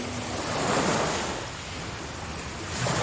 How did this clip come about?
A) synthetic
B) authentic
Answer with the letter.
B